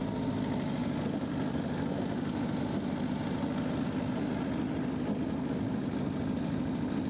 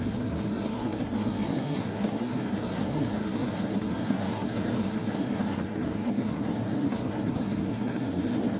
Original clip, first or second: first